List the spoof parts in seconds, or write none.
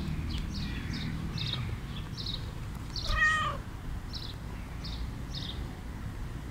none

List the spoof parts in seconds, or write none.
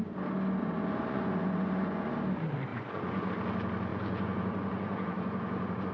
0.6-2.1; 2.7-3.3; 3.9-5.9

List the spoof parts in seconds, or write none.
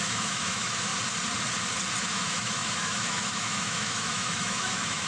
0.0-0.9; 2.0-5.1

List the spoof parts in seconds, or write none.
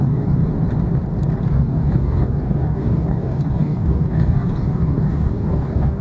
0.0-0.5; 1.5-6.0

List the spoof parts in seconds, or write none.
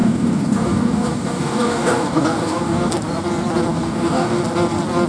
0.0-2.9; 3.7-4.4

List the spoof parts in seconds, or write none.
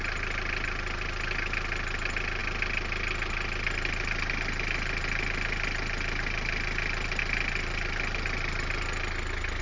none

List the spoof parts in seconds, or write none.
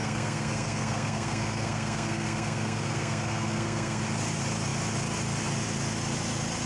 0.0-4.0